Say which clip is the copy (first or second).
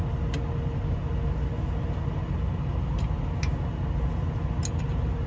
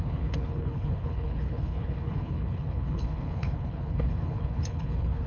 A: second